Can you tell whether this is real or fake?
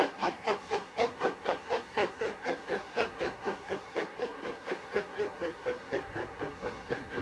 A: fake